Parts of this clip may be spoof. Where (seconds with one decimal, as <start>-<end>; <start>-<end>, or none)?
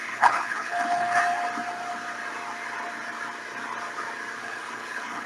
0.0-1.2; 4.4-5.3